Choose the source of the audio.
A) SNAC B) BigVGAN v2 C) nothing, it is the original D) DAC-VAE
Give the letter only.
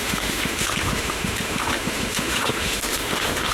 D